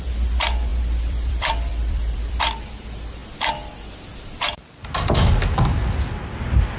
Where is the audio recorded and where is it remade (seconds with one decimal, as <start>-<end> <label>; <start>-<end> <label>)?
0.0-0.7 recorded; 0.7-2.4 remade; 2.4-6.8 recorded